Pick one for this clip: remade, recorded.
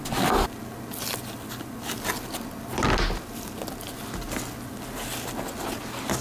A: recorded